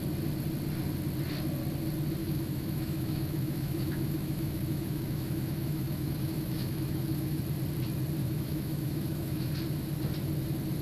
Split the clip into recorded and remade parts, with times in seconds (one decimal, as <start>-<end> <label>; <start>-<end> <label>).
0.0-2.2 recorded; 2.2-7.4 remade; 7.4-8.2 recorded; 8.2-9.5 remade; 9.5-10.8 recorded